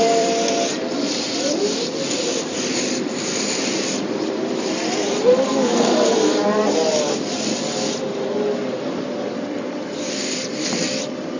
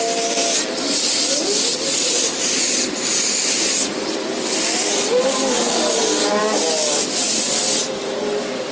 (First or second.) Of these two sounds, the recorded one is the second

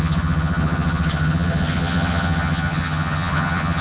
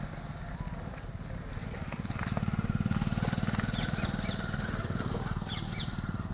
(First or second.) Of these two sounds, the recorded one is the second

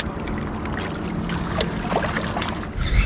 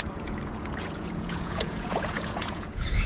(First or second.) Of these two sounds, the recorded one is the first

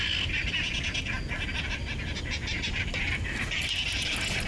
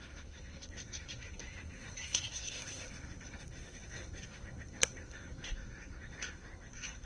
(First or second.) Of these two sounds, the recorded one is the first